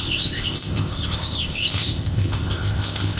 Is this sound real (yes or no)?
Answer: no